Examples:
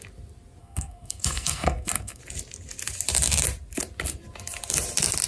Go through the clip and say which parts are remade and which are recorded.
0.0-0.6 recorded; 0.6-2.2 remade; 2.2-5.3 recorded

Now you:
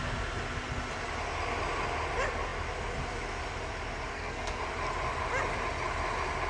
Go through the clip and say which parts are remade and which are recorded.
0.0-4.1 recorded; 4.1-4.6 remade; 4.6-6.5 recorded

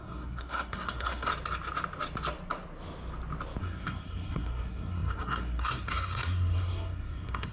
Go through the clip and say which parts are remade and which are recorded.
0.0-1.3 remade; 1.3-3.6 recorded; 3.6-7.5 remade

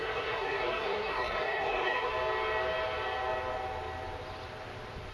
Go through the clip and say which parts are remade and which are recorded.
0.0-2.1 remade; 2.1-5.1 recorded

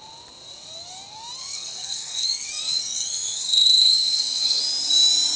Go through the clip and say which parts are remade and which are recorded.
0.0-1.4 recorded; 1.4-4.6 remade; 4.6-5.4 recorded

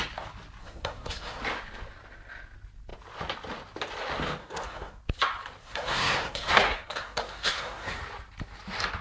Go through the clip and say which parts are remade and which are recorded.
0.0-0.6 recorded; 0.6-1.4 remade; 1.4-4.4 recorded; 4.4-5.0 remade; 5.0-5.6 recorded; 5.6-8.0 remade; 8.0-9.0 recorded

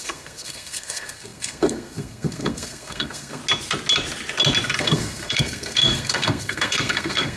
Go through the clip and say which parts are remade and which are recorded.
0.0-3.4 remade; 3.4-4.8 recorded; 4.8-7.4 remade

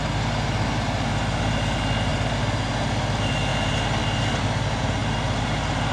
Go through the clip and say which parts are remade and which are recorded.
0.0-5.9 recorded